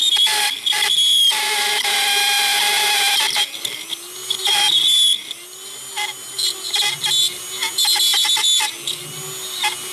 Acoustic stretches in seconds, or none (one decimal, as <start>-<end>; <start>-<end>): 0.0-9.9